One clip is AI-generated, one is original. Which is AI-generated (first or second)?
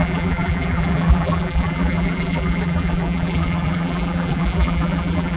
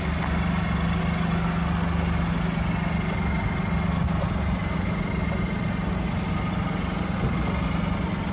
first